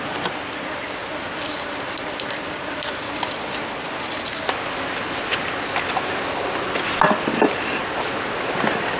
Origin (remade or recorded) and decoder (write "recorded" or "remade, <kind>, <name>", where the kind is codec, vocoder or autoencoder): recorded